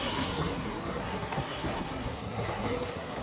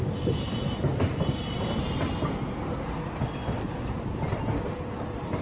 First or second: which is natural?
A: second